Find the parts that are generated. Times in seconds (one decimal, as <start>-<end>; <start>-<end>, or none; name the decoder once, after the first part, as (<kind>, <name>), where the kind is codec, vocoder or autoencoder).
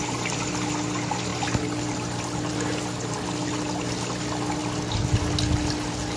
none